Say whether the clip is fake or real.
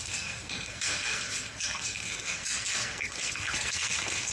fake